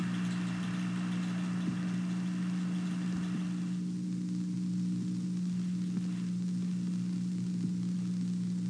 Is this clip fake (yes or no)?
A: no